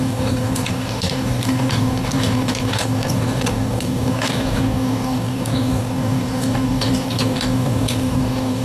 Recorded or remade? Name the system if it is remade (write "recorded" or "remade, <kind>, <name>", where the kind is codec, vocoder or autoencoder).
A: remade, codec, DAC